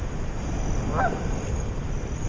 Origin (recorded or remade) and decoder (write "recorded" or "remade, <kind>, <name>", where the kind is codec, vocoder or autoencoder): recorded